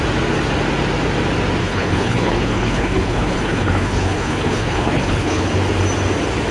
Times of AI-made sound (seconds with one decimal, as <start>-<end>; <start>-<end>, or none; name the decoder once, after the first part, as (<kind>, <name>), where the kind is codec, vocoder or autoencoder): 1.6-5.5 (codec, HILCodec)